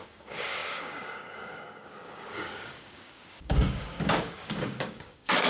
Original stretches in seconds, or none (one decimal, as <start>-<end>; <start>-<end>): none